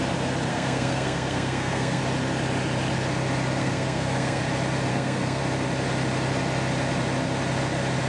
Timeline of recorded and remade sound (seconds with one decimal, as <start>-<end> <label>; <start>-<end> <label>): 0.0-0.5 recorded; 0.5-2.0 remade; 2.0-3.6 recorded; 3.6-4.4 remade; 4.4-4.9 recorded; 4.9-5.4 remade; 5.4-8.1 recorded